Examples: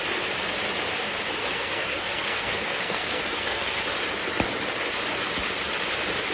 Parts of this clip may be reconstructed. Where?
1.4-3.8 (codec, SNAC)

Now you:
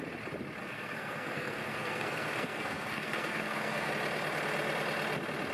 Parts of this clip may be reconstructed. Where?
0.6-3.9 (codec, SNAC)